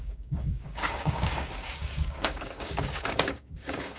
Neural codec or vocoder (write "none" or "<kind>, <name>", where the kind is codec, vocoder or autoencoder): codec, DAC